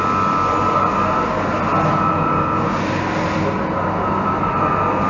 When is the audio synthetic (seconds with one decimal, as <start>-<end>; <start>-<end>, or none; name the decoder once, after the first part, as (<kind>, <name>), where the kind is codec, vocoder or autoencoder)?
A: none